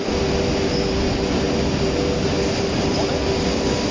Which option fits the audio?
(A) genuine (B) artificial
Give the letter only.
A